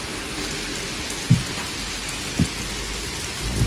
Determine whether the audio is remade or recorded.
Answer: recorded